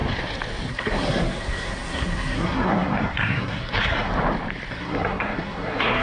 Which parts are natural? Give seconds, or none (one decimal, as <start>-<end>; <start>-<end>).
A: 0.0-0.7; 4.1-4.7